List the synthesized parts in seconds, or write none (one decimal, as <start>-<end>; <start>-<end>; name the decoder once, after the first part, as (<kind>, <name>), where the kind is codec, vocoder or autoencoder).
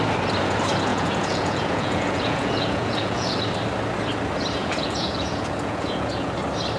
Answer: 0.9-3.4 (vocoder, Vocos); 4.6-6.3